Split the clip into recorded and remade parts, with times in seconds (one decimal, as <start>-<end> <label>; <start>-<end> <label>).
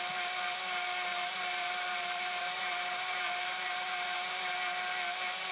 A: 0.0-1.1 recorded; 1.1-4.4 remade; 4.4-5.5 recorded